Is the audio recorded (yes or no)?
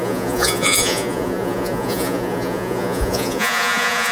no